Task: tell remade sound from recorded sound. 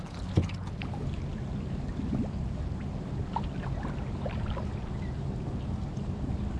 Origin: recorded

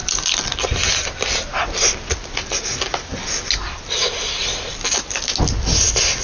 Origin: recorded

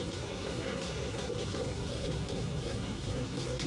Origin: remade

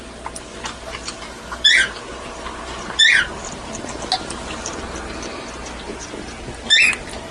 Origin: recorded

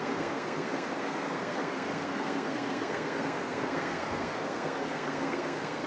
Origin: remade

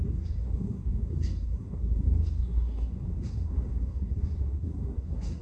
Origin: remade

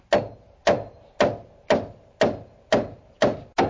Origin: recorded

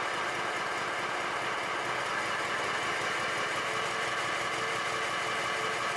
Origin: recorded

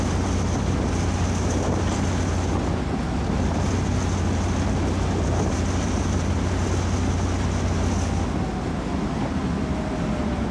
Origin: recorded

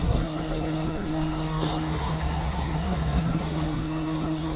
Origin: remade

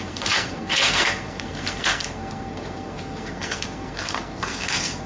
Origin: remade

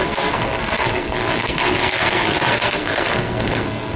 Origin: remade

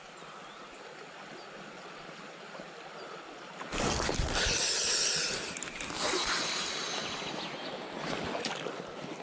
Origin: recorded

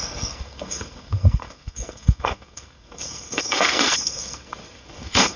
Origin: remade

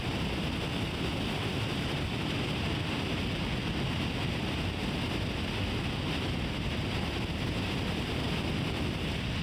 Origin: recorded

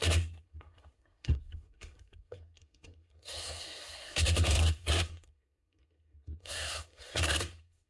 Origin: remade